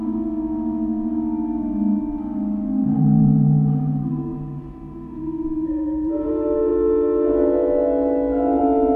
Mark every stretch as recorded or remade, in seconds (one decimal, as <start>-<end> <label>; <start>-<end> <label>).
0.0-2.8 recorded; 2.8-6.3 remade; 6.3-9.0 recorded